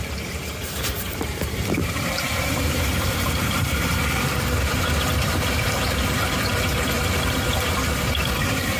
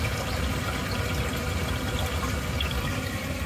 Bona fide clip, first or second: second